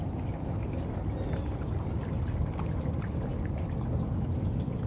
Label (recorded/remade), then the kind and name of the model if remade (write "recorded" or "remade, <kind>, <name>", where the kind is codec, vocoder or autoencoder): recorded